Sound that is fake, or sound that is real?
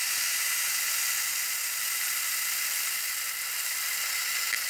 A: real